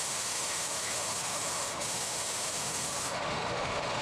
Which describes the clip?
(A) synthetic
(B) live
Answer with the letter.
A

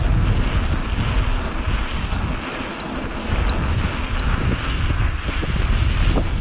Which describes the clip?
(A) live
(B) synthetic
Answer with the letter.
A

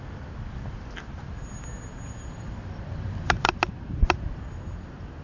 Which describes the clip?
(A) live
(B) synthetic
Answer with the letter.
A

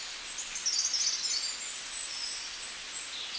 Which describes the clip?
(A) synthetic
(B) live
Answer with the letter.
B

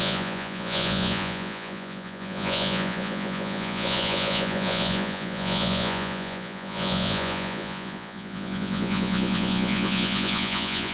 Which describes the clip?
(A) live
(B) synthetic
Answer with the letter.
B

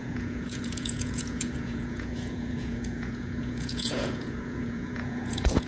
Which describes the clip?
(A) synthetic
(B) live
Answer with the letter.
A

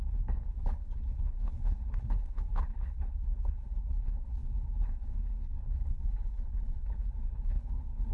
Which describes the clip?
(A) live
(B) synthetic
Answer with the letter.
B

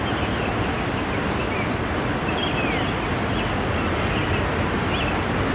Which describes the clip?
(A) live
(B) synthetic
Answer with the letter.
A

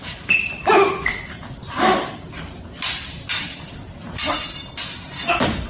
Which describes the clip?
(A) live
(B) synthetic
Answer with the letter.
A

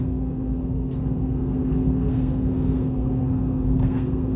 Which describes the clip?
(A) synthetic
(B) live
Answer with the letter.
A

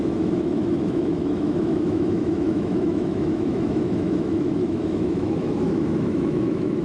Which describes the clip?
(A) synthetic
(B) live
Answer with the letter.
A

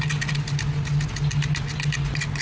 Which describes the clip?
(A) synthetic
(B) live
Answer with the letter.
B